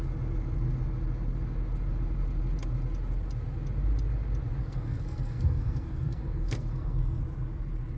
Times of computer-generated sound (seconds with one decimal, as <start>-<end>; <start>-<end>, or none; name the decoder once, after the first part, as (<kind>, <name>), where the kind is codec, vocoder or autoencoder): 4.6-7.2 (codec, SNAC)